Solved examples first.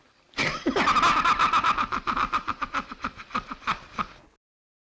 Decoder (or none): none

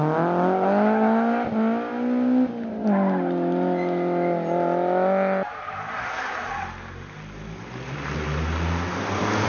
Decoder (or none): none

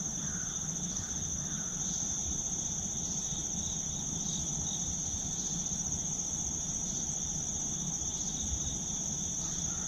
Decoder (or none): none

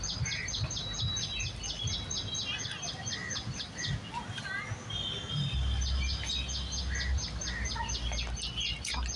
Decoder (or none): none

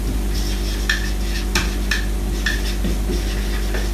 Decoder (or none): none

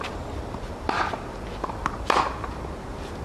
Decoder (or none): none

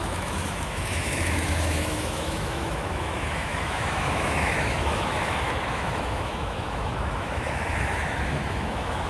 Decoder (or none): autoencoder, DAC-VAE